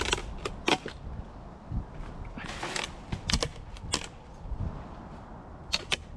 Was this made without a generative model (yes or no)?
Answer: yes